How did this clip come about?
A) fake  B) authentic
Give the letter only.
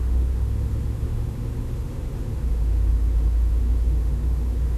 A